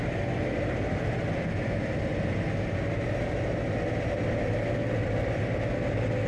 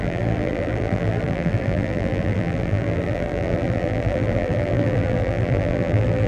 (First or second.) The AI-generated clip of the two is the second